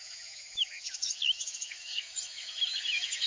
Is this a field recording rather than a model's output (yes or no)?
no